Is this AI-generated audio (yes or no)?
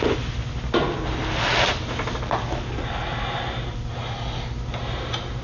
no